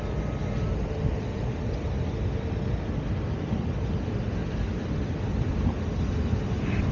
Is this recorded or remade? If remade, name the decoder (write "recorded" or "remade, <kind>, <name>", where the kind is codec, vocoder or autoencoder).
recorded